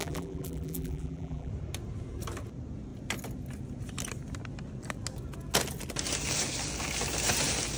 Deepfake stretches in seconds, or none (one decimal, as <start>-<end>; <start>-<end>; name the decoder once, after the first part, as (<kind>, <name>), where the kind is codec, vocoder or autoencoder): 0.0-1.5 (vocoder, BigVGAN v2)